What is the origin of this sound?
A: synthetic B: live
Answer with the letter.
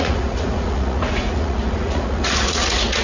A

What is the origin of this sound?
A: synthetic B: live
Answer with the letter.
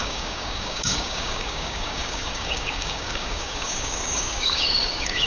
A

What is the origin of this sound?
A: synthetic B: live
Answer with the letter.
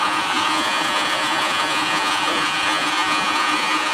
A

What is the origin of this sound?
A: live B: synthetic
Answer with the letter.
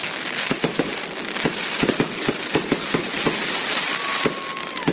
A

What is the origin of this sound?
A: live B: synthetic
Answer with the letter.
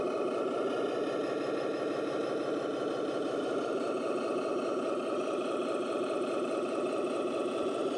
A